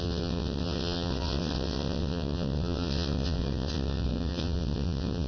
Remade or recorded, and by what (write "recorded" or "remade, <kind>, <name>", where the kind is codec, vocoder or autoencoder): remade, vocoder, WaveNeXt